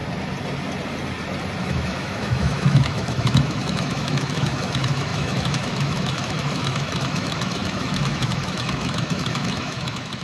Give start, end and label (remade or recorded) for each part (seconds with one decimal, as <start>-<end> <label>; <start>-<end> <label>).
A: 0.0-1.6 recorded; 1.6-10.2 remade